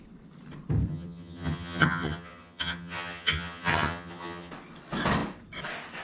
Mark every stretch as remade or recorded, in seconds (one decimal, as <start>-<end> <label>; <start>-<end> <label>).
0.0-0.9 recorded; 0.9-4.5 remade; 4.5-6.0 recorded